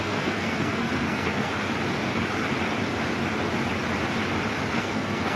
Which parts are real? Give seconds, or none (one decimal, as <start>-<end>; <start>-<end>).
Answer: 1.5-4.7